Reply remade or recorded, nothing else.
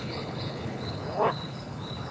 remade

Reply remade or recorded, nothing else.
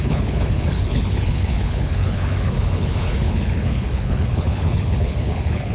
remade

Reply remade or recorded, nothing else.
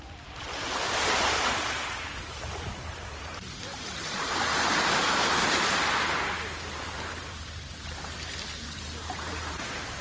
remade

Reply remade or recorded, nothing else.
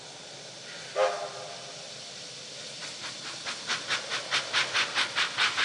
recorded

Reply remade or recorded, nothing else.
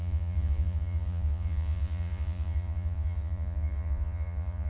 remade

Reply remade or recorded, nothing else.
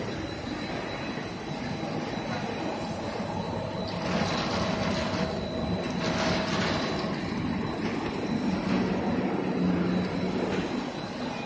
recorded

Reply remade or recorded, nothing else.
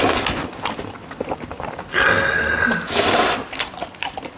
recorded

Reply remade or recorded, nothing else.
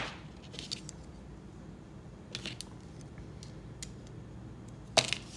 recorded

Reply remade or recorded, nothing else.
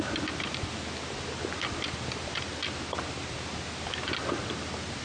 recorded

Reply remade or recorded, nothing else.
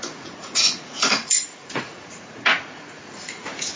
remade